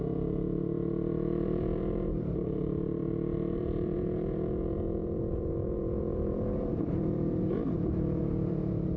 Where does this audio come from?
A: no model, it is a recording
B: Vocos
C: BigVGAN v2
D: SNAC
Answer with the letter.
C